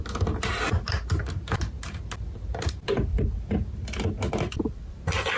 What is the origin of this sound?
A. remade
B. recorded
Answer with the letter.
B